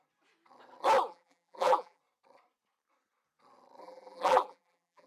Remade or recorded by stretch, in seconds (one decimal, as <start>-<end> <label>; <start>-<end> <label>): 0.0-1.1 recorded; 1.1-2.0 remade; 2.0-3.8 recorded; 3.8-5.1 remade